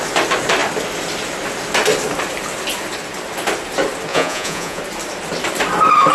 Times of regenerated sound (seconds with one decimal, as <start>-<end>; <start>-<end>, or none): 4.1-4.8